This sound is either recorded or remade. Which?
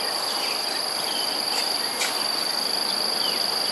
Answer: recorded